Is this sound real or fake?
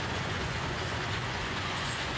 fake